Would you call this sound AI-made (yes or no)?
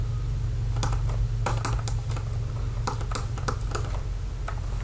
no